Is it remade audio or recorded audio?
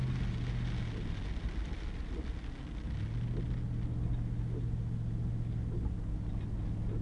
recorded